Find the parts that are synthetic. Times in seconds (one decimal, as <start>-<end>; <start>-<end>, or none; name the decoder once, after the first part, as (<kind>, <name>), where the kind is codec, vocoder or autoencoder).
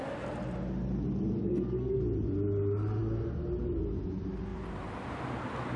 1.4-2.0 (codec, SNAC)